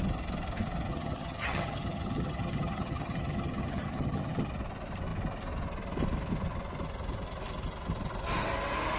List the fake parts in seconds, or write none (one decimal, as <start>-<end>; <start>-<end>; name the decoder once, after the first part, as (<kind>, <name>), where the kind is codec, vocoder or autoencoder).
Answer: 0.9-4.5 (vocoder, HiFi-GAN)